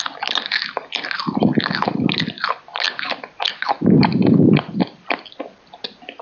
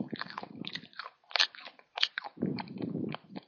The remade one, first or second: second